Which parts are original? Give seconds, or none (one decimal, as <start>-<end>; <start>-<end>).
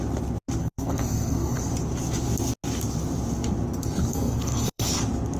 0.0-0.6; 1.6-4.1; 4.9-5.4